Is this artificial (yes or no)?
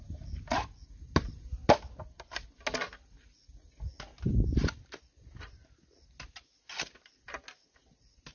no